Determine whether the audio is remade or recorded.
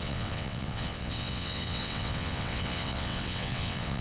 remade